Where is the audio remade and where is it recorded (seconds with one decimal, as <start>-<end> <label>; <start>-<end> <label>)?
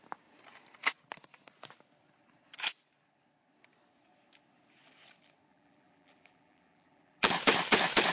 0.0-5.5 recorded; 5.5-7.3 remade; 7.3-8.1 recorded